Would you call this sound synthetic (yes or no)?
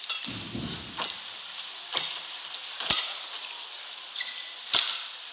no